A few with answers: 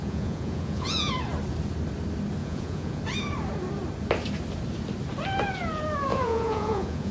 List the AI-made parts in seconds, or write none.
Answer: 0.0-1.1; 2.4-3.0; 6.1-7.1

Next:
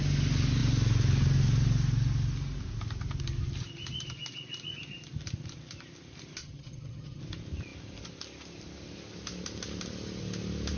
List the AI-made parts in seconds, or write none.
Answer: 6.4-7.2

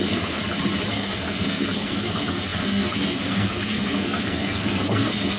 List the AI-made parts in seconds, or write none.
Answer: 0.0-0.4; 0.9-5.4

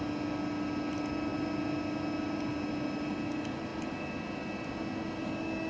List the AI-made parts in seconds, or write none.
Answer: none

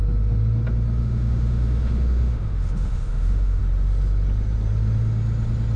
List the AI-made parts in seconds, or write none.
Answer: 1.0-3.6

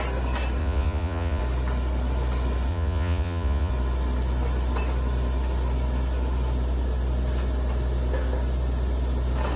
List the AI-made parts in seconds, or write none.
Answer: 0.6-1.4; 2.7-3.7